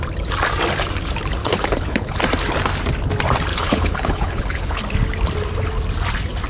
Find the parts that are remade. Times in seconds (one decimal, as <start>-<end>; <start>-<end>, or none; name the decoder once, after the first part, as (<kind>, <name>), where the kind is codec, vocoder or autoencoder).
1.4-2.2 (codec, HILCodec); 3.5-4.8